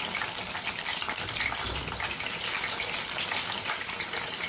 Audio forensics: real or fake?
real